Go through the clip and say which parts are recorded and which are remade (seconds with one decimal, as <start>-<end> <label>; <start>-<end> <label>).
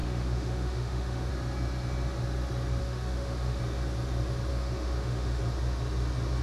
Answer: 0.0-1.3 remade; 1.3-2.8 recorded; 2.8-3.6 remade; 3.6-4.5 recorded; 4.5-5.4 remade; 5.4-6.4 recorded